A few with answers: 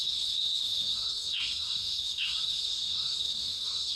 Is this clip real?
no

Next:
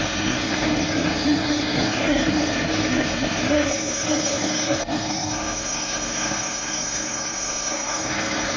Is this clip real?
no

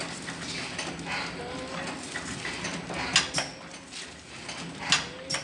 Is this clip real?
yes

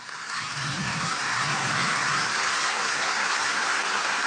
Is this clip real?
no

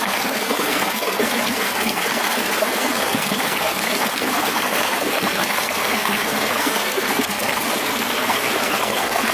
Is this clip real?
no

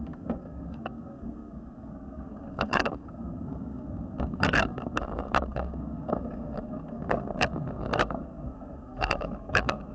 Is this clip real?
no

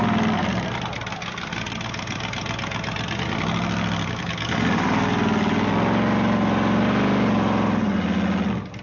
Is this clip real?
yes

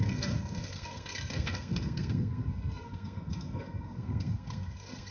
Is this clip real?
no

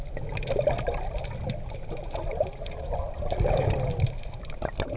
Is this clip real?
yes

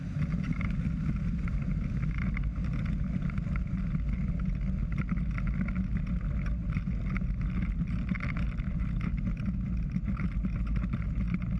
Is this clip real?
yes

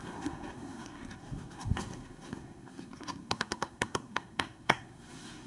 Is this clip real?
no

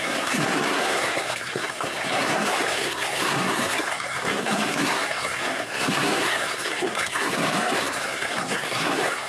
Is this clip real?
no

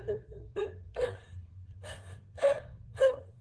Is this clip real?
no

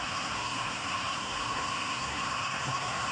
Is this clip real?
no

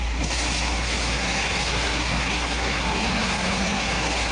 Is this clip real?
no